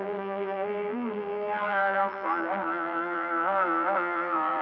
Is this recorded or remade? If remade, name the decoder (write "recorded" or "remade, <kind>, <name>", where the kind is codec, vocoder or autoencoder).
remade, vocoder, BigVGAN v2